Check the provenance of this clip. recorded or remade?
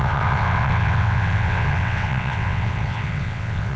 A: remade